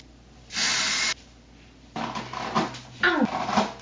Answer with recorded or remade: recorded